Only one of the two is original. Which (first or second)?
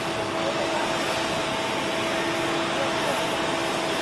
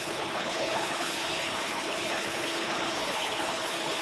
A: first